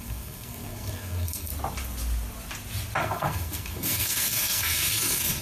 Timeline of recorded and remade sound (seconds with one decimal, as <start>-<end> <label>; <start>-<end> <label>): 0.0-1.5 remade; 1.5-3.0 recorded; 3.0-5.4 remade